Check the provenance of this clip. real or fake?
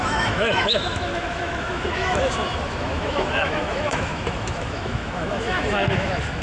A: fake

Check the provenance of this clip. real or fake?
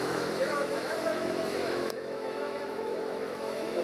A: fake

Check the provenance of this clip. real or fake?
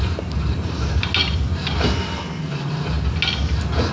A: real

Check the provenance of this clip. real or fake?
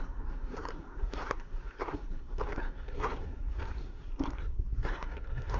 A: fake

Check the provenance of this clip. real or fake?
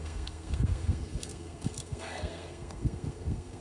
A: fake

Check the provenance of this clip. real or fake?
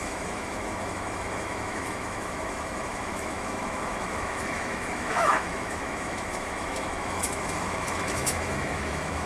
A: fake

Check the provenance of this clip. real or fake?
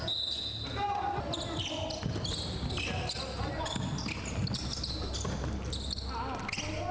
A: real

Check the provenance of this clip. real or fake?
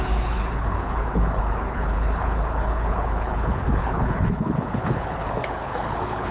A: fake